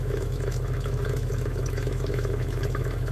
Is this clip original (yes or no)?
no